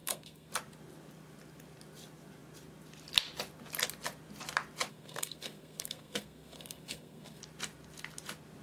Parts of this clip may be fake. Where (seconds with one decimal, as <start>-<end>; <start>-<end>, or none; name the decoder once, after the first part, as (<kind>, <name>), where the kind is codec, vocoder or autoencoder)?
0.0-0.5 (codec, SNAC); 4.9-7.4